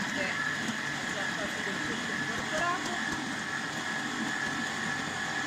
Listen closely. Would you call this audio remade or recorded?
recorded